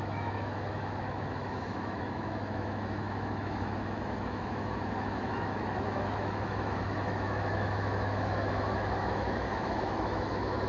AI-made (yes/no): yes